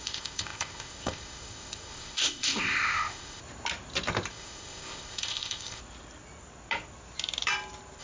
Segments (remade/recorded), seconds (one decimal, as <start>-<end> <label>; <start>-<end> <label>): 0.0-3.4 remade; 3.4-4.3 recorded; 4.3-5.8 remade; 5.8-8.0 recorded